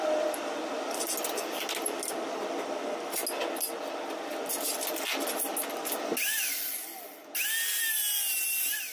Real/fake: real